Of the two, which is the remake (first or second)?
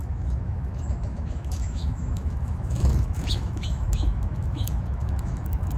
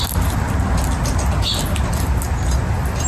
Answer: first